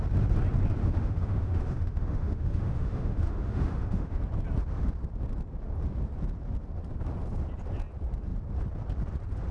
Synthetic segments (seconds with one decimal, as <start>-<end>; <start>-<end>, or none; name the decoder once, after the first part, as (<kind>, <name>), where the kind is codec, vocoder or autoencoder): 0.8-4.2 (autoencoder, DAC-VAE)